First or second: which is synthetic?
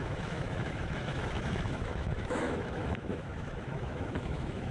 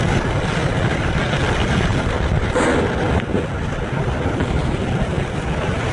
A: first